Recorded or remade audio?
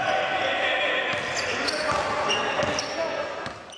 recorded